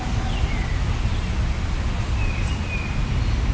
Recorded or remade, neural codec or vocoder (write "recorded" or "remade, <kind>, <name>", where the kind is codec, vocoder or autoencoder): recorded